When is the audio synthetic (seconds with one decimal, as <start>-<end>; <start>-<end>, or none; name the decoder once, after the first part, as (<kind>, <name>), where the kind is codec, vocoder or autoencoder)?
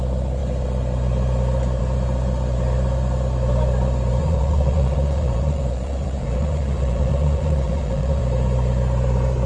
4.2-8.2 (vocoder, Vocos)